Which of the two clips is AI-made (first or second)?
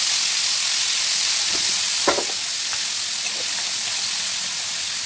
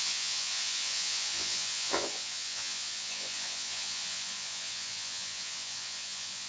second